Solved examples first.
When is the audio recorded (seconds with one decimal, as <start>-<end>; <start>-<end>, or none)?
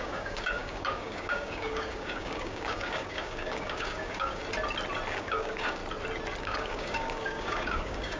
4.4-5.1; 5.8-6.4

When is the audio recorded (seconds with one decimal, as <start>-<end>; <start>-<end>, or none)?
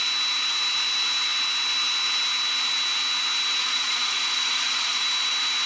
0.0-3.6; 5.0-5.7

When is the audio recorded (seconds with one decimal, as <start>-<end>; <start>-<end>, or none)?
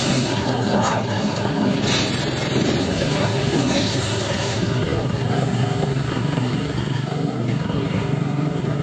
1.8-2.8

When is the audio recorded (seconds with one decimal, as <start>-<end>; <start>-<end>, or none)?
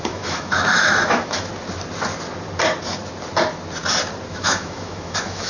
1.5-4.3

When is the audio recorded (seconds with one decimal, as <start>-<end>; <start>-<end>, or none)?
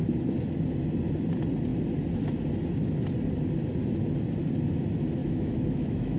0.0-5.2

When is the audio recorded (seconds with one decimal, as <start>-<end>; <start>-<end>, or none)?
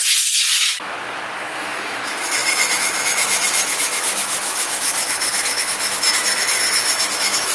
none